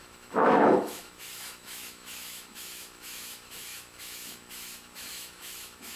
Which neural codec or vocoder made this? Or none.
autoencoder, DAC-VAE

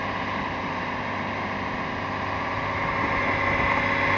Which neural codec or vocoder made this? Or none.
none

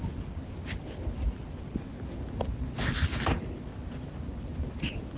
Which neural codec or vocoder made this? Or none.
none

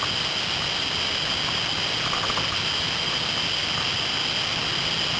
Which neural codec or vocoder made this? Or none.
none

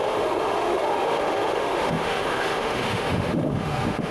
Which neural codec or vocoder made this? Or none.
autoencoder, DAC-VAE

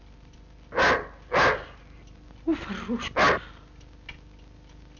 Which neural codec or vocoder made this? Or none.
none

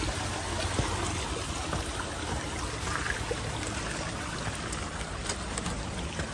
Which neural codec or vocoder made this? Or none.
none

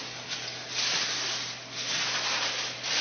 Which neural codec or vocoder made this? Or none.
none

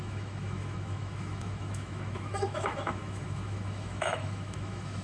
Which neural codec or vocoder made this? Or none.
autoencoder, DAC-VAE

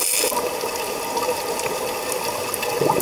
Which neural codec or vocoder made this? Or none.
none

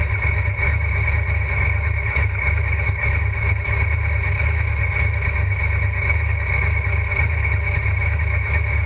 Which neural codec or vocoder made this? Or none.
autoencoder, DAC-VAE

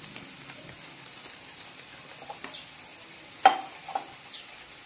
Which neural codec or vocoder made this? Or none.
none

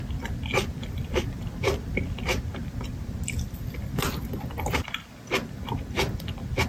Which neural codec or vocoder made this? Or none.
none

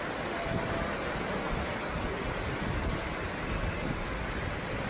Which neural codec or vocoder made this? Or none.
none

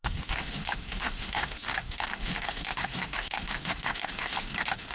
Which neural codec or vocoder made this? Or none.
autoencoder, DAC-VAE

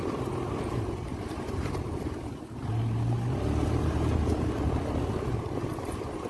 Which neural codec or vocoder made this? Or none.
none